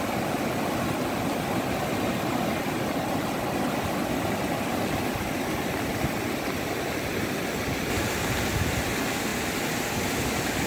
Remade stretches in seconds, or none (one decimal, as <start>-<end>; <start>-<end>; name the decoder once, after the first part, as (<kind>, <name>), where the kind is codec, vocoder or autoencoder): none